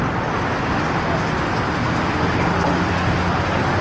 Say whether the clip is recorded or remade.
recorded